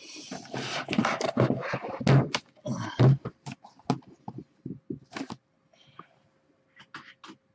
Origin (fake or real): real